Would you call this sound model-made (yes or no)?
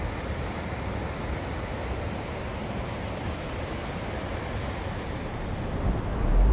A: no